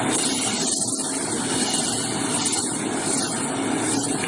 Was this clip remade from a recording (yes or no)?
no